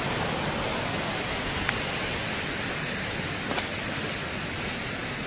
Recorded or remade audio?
recorded